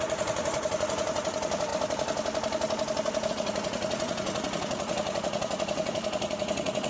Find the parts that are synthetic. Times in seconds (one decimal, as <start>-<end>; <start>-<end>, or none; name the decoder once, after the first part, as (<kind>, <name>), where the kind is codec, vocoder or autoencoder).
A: 0.0-1.7 (vocoder, Vocos); 3.3-6.9